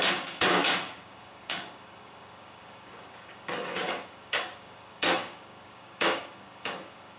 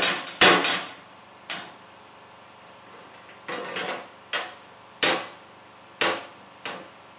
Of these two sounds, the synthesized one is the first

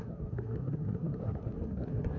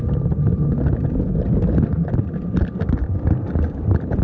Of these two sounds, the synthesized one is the first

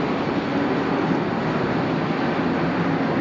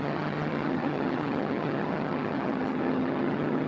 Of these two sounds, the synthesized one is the second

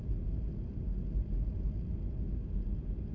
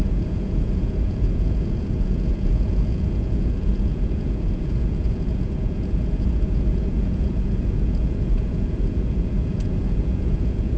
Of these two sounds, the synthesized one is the second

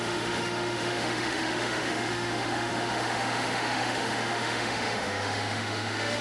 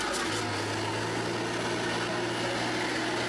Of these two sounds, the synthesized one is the first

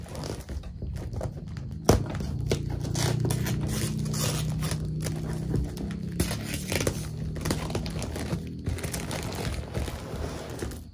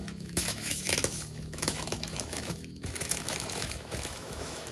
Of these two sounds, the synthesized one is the second